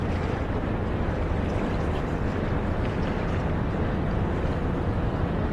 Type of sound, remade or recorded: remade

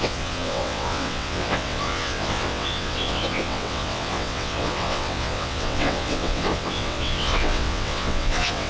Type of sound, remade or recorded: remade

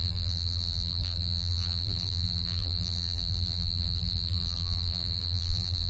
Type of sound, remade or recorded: remade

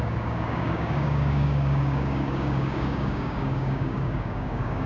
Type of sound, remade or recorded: remade